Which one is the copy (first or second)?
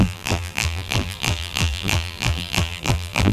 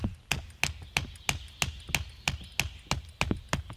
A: first